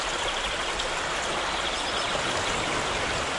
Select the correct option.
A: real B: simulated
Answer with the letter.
A